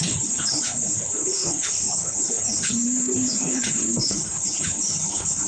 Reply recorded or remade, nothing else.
remade